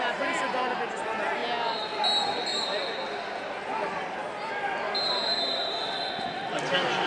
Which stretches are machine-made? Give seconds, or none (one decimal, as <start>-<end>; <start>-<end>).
none